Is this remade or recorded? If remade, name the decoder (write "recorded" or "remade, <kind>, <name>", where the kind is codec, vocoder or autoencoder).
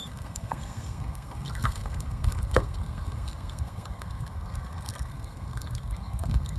remade, codec, SNAC